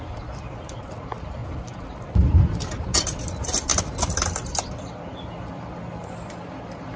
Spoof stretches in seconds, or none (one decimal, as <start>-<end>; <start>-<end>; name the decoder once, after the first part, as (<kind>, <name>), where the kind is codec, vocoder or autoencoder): 0.0-1.4 (vocoder, BigVGAN v2); 3.0-7.0